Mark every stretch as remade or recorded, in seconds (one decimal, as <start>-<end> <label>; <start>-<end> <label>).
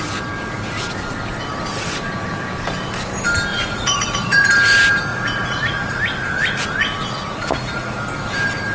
0.0-3.5 recorded; 3.5-4.5 remade; 4.5-5.1 recorded; 5.1-6.0 remade; 6.0-7.0 recorded; 7.0-8.0 remade; 8.0-8.7 recorded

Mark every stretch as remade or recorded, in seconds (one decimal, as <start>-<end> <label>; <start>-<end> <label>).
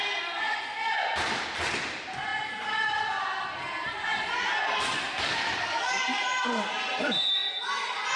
0.0-5.4 recorded; 5.4-6.0 remade; 6.0-8.2 recorded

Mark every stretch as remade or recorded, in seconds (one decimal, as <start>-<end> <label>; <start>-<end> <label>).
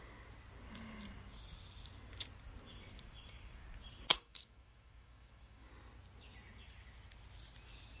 0.0-4.1 recorded; 4.1-5.7 remade; 5.7-8.0 recorded